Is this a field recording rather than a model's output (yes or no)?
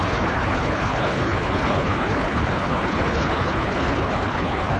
no